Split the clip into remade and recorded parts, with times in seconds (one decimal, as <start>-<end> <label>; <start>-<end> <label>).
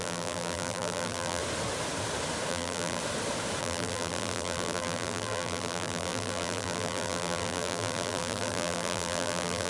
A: 0.0-1.4 remade; 1.4-2.5 recorded; 2.5-3.0 remade; 3.0-3.6 recorded; 3.6-9.7 remade